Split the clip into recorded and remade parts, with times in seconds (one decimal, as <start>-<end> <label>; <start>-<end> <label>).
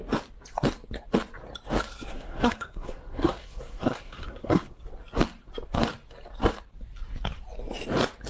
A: 0.0-2.1 recorded; 2.1-4.8 remade; 4.8-8.3 recorded